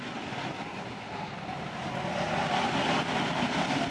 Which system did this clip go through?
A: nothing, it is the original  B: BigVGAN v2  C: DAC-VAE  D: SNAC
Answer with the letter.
A